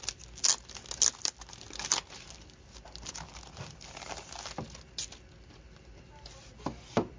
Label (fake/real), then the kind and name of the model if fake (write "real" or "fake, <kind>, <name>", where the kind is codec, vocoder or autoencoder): real